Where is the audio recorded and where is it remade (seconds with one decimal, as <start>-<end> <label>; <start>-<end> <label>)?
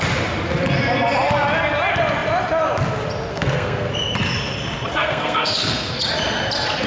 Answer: 0.0-3.3 recorded; 3.3-3.9 remade; 3.9-4.9 recorded; 4.9-6.0 remade; 6.0-6.9 recorded